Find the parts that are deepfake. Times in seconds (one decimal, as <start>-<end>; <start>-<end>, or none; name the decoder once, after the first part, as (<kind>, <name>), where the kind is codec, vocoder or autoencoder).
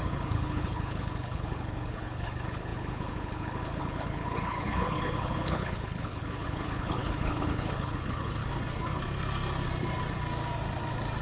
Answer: 0.0-8.4 (codec, HILCodec)